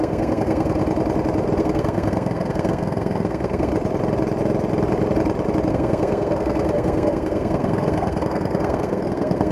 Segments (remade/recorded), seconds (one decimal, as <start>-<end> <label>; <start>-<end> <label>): 0.0-0.8 remade; 0.8-1.6 recorded; 1.6-3.7 remade; 3.7-5.7 recorded; 5.7-9.5 remade